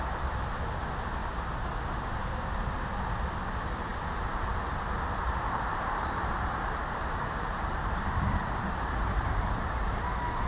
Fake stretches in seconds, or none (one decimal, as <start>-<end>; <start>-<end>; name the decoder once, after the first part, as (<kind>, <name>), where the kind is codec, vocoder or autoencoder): 1.2-1.7 (vocoder, BigVGAN v2); 5.7-10.1